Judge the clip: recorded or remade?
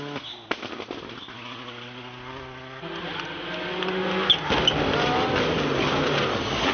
recorded